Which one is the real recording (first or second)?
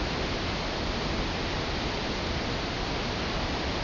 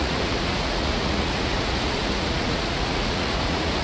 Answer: first